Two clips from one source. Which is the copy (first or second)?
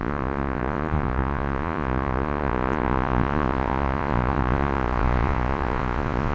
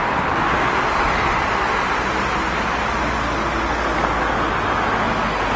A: first